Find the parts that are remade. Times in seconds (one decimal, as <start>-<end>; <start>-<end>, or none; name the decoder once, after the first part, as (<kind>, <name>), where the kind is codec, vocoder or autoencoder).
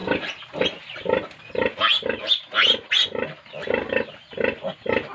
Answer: none